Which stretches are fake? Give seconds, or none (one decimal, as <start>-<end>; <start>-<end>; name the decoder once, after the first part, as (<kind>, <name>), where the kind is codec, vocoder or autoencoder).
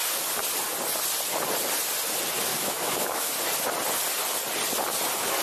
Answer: 2.5-3.3 (autoencoder, DAC-VAE)